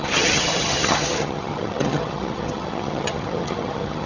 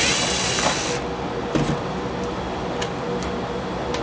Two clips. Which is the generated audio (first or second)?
first